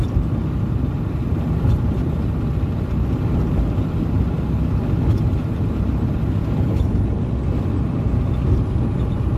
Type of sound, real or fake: real